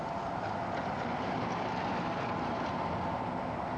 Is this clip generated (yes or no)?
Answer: no